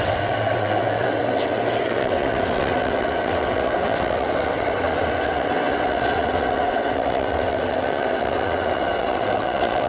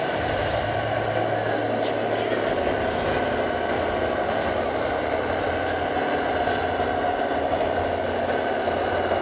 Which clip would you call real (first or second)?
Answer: second